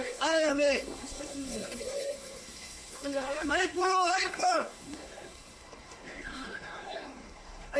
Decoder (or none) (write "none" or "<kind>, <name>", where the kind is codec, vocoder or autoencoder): codec, SNAC